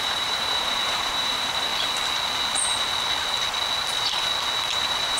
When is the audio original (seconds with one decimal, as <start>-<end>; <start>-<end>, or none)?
1.7-4.8